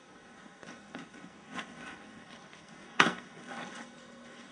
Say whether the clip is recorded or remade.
remade